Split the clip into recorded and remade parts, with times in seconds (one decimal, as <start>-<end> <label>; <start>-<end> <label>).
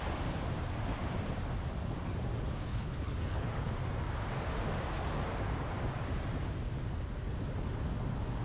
0.0-2.7 recorded; 2.7-3.7 remade; 3.7-8.4 recorded